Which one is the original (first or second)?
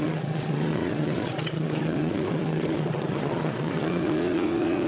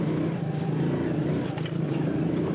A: second